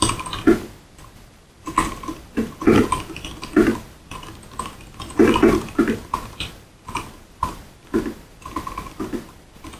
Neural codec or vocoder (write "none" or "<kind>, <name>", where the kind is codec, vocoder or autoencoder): vocoder, BigVGAN v2